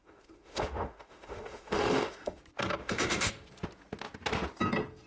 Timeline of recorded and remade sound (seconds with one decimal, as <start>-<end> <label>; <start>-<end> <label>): 0.0-2.4 remade; 2.4-2.8 recorded; 2.8-3.3 remade; 3.3-5.1 recorded